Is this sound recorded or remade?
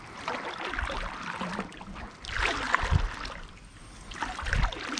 recorded